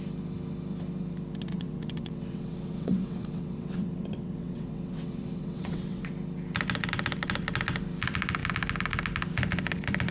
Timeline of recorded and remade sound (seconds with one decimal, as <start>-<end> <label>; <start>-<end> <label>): 0.0-1.5 recorded; 1.5-6.1 remade; 6.1-10.1 recorded